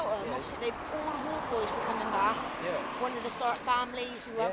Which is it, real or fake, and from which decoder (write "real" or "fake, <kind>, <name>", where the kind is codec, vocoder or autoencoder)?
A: real